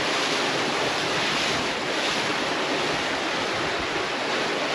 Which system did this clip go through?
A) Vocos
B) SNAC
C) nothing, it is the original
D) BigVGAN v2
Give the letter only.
C